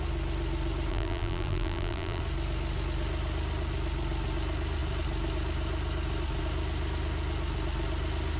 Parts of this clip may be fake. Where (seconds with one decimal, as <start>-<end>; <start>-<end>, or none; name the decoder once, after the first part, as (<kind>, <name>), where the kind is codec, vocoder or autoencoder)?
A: 0.9-2.2 (vocoder, BigVGAN v2)